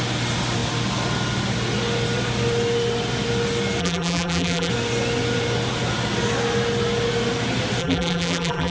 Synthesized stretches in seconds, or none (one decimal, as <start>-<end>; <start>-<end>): 3.8-4.7; 7.8-8.7